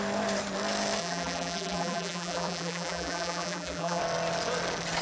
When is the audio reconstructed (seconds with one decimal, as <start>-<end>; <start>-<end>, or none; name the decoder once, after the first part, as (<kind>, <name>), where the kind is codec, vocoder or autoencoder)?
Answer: 1.0-4.0 (vocoder, BigVGAN v2)